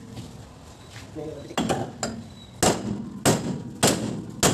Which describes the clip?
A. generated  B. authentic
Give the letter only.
B